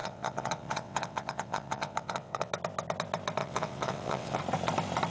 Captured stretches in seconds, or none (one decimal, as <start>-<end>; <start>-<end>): 2.5-3.4; 4.4-5.1